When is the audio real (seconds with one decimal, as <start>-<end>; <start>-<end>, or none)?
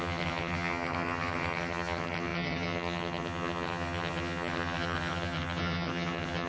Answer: none